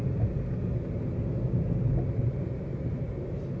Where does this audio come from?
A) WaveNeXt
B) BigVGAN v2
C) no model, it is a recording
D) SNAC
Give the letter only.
C